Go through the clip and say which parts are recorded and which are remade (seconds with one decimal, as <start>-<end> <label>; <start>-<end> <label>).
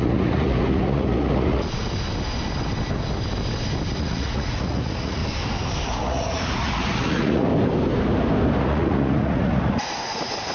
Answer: 0.0-1.8 remade; 1.8-4.0 recorded; 4.0-5.2 remade; 5.2-5.8 recorded; 5.8-7.5 remade; 7.5-8.6 recorded; 8.6-10.5 remade